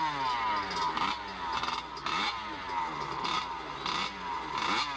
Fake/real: real